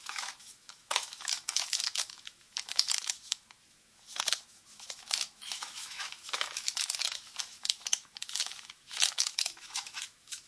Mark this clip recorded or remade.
remade